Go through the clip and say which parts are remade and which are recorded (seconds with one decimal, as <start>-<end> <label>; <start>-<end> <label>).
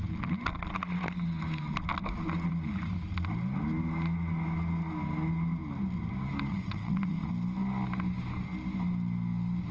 0.0-6.5 recorded; 6.5-7.3 remade; 7.3-9.7 recorded